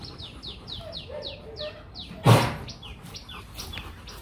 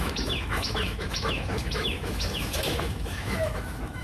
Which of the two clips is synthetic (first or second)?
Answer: second